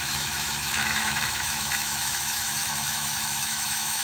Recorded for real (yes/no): no